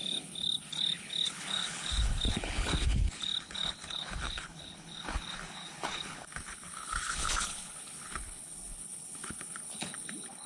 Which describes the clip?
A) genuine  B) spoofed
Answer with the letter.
B